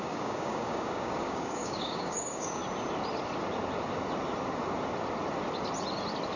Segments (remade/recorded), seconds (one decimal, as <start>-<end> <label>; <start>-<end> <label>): 0.0-2.6 remade; 2.6-6.4 recorded